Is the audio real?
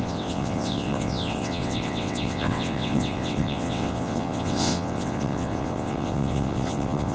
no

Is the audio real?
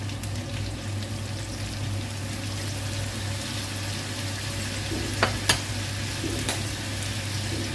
yes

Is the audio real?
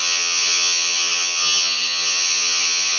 no